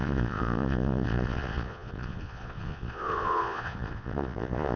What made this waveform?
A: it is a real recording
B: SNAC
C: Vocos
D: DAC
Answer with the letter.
C